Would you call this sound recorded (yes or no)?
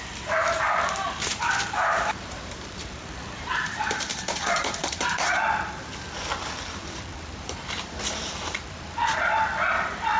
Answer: no